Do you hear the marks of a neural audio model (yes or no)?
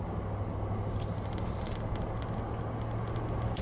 no